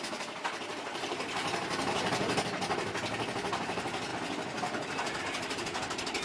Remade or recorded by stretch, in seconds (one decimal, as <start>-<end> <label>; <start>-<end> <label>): 0.0-0.7 recorded; 0.7-2.4 remade; 2.4-6.2 recorded